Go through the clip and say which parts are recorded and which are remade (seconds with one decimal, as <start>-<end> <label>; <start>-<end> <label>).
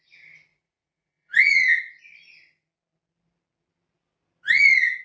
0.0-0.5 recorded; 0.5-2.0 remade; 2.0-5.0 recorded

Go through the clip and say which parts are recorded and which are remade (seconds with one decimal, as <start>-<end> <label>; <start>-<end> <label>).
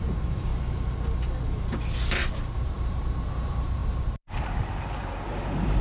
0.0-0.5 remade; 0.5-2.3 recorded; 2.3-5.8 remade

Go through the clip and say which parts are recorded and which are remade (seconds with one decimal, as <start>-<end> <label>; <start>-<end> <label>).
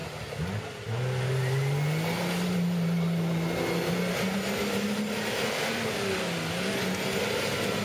0.0-7.8 recorded